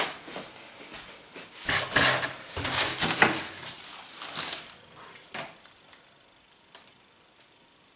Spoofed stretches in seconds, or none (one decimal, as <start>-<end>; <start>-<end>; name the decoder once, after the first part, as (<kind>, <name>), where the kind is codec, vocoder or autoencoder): none